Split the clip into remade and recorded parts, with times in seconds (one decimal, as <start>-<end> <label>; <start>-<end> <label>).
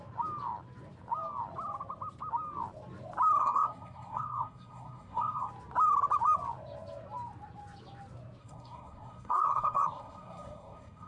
0.0-3.4 recorded; 3.4-5.5 remade; 5.5-8.4 recorded; 8.4-11.1 remade